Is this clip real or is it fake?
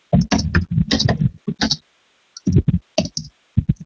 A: real